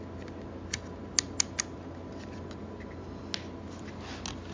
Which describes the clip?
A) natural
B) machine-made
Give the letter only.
A